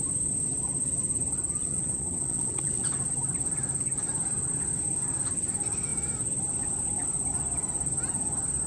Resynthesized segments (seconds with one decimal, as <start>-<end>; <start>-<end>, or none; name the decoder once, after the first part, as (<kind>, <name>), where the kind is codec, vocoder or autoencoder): 1.6-2.9 (vocoder, WaveNeXt)